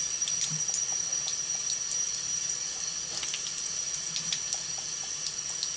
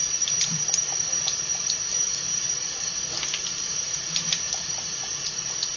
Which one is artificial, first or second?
second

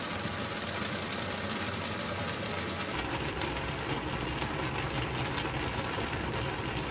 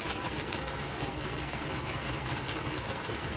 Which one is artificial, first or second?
second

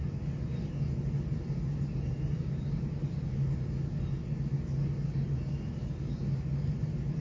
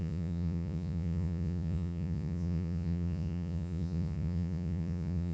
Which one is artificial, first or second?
second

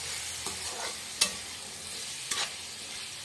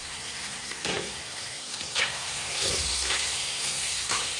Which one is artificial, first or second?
second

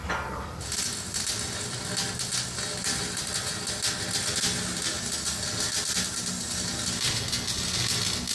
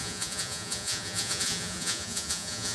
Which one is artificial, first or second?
second